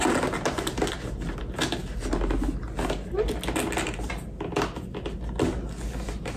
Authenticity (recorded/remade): recorded